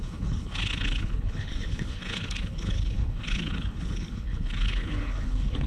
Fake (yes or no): yes